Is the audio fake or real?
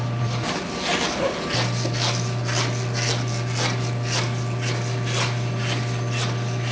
real